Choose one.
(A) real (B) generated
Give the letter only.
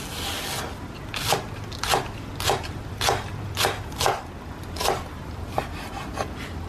A